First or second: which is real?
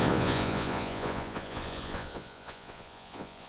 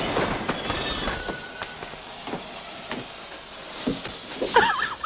second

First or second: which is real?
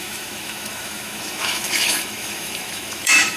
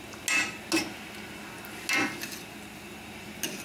second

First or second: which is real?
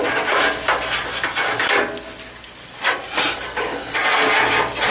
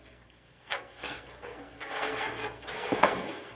first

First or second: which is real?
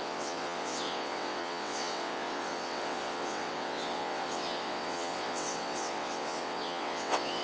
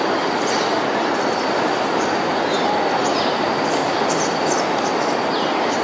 second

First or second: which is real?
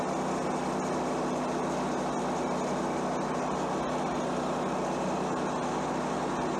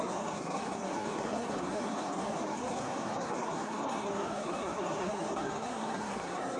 first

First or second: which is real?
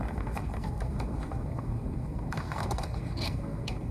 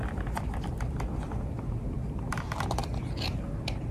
second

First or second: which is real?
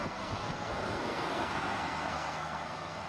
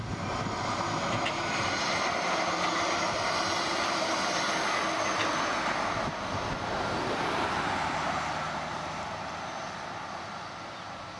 second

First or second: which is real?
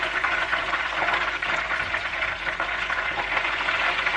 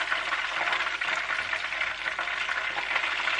second